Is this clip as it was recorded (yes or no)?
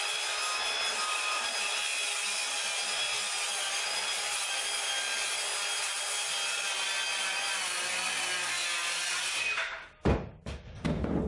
yes